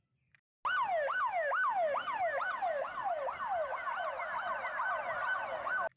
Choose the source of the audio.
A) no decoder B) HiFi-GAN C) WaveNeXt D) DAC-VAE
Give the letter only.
A